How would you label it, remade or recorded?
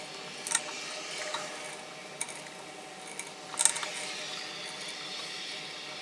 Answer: recorded